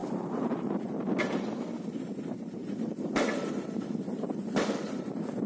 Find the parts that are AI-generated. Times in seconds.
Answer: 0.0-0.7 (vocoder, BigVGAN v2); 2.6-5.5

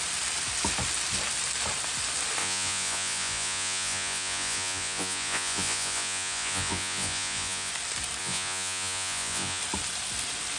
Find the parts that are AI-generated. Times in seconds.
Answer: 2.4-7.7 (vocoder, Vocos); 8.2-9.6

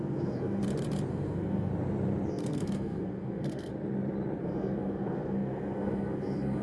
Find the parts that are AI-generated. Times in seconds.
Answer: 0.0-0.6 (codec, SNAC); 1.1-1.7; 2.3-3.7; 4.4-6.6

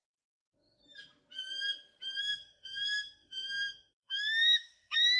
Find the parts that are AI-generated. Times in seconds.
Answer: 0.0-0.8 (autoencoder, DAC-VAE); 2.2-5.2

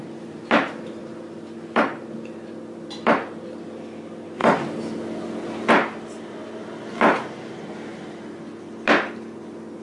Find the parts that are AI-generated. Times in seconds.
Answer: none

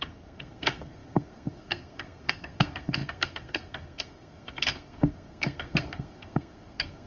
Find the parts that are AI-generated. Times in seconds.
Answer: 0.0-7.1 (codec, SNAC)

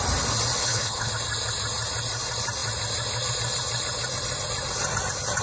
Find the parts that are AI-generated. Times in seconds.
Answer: 0.6-1.1 (codec, HILCodec)

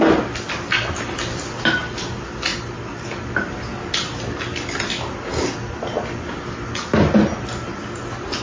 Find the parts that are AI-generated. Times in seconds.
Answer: none